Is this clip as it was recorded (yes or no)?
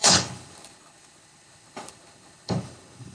no